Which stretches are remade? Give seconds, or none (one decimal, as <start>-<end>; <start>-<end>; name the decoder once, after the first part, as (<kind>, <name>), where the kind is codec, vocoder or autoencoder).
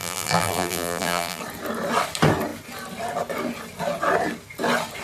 0.0-1.4 (vocoder, BigVGAN v2)